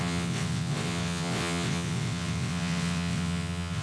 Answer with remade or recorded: remade